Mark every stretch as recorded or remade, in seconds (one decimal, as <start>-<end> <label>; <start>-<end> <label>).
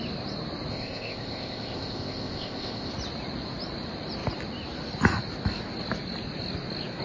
0.0-0.7 recorded; 0.7-2.9 remade; 2.9-7.0 recorded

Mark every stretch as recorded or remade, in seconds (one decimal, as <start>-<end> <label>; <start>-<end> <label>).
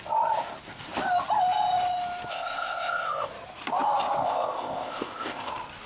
0.0-2.3 recorded; 2.3-3.3 remade; 3.3-4.2 recorded; 4.2-5.5 remade; 5.5-5.9 recorded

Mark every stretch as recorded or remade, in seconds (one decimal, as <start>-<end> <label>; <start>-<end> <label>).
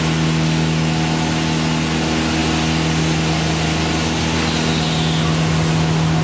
0.0-6.2 recorded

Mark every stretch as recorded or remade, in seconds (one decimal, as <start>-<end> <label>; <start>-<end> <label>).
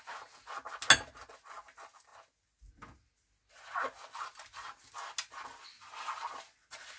0.0-7.0 recorded